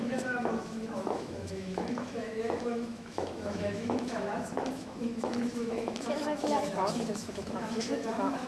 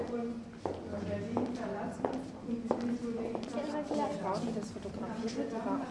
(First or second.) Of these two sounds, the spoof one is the first